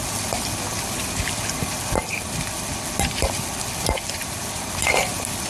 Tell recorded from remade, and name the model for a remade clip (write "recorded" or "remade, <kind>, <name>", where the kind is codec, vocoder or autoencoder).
recorded